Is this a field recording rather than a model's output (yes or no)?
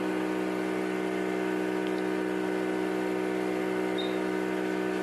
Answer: yes